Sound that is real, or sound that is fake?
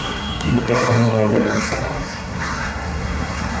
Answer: fake